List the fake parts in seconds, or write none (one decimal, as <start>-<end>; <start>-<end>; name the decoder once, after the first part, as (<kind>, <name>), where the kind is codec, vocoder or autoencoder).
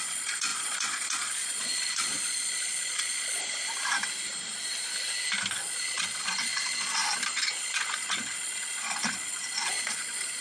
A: 0.0-3.4 (vocoder, Vocos); 5.5-7.0; 7.6-10.4